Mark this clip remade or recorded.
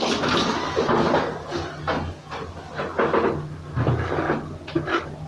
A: recorded